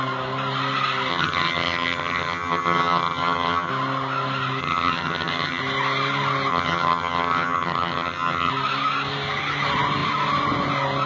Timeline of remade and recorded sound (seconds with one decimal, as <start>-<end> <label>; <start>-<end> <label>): 0.0-1.1 recorded; 1.1-3.7 remade; 3.7-4.6 recorded; 4.6-5.6 remade; 5.6-6.5 recorded; 6.5-8.5 remade; 8.5-11.1 recorded